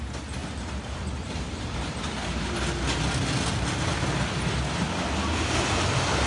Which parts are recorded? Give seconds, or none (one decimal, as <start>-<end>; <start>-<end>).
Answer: 0.0-6.3